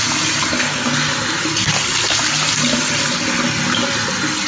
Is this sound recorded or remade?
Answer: recorded